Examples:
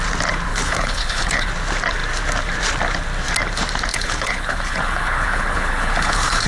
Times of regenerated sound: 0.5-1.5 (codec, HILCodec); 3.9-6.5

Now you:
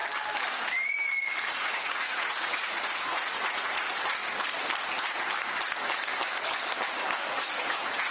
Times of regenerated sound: 1.5-4.2 (vocoder, Vocos); 7.3-8.1

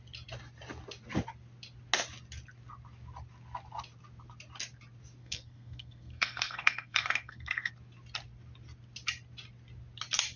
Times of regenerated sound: 5.2-7.7 (codec, SNAC)

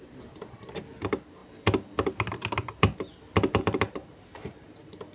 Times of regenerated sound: 0.0-1.4 (vocoder, BigVGAN v2); 3.6-5.1

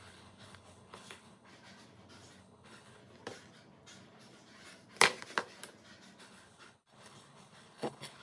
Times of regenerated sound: 0.0-1.5 (codec, HILCodec); 2.4-3.0; 6.2-8.2

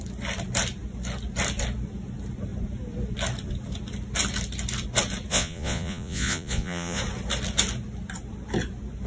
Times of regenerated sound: 5.3-7.0 (vocoder, Vocos)

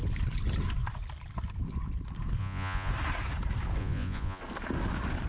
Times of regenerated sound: 2.4-2.9 (vocoder, Vocos); 3.8-4.4

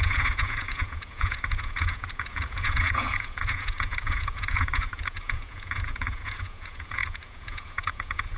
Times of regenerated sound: 0.0-8.4 (vocoder, Vocos)